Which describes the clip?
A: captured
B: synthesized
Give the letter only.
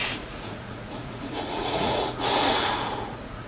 B